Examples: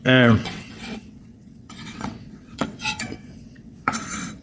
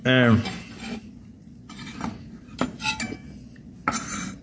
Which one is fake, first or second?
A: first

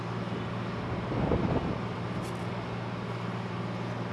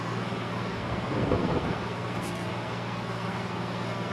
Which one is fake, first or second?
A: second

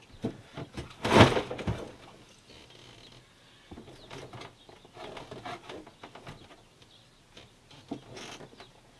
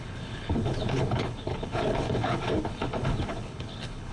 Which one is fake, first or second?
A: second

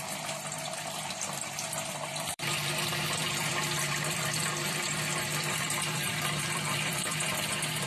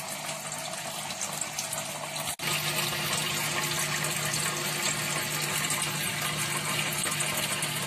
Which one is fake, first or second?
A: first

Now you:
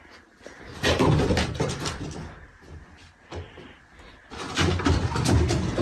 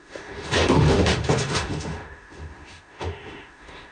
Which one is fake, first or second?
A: second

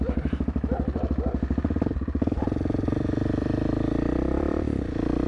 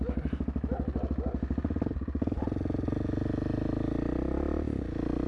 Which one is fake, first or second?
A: first